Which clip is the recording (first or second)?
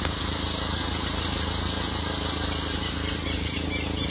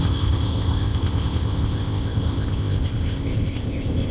first